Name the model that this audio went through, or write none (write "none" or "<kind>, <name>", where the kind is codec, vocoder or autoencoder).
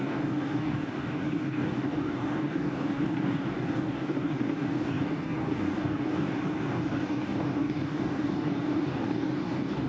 codec, DAC